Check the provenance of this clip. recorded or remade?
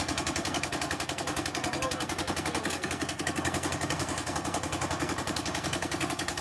remade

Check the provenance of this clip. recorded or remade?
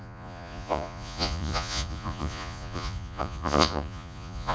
remade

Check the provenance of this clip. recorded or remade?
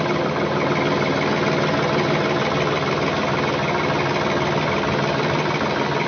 recorded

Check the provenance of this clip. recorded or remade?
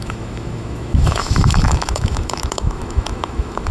remade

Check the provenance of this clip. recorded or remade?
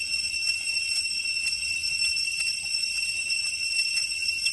remade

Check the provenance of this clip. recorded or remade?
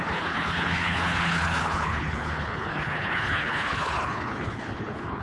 remade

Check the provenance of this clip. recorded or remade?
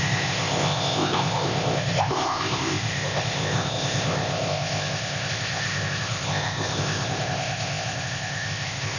remade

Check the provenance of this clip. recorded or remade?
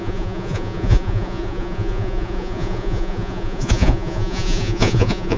remade